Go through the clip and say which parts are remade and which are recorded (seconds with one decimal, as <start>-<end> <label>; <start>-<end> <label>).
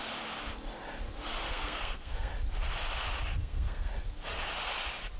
0.0-1.5 recorded; 1.5-2.3 remade; 2.3-3.4 recorded; 3.4-3.9 remade; 3.9-5.2 recorded